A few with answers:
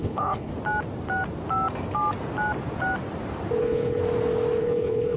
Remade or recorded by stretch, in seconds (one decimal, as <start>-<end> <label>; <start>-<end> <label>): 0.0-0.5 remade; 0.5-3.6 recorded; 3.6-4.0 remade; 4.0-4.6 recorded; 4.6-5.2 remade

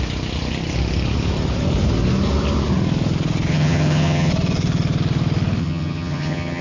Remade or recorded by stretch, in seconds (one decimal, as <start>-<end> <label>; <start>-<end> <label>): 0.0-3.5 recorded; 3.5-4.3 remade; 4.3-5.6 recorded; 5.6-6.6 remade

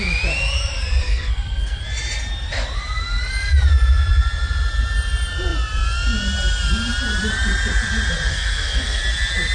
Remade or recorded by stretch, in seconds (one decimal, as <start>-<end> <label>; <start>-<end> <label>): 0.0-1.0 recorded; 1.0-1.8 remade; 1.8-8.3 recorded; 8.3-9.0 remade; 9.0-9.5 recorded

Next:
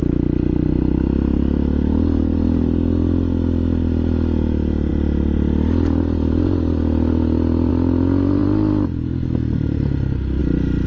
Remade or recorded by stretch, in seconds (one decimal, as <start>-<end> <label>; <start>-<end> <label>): 0.0-10.9 recorded

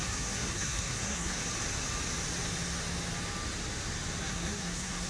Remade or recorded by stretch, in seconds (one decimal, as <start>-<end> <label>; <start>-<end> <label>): 0.0-1.4 remade; 1.4-4.2 recorded; 4.2-5.1 remade